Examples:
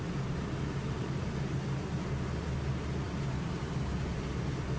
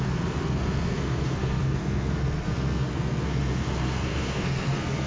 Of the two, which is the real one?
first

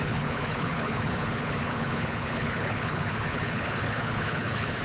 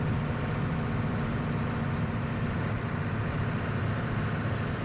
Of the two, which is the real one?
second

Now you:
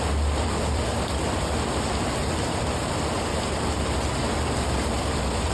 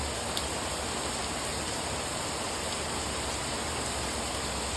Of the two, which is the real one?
second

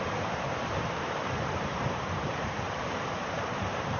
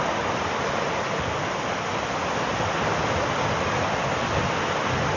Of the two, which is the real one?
second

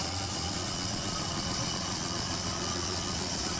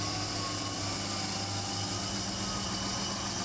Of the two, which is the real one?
second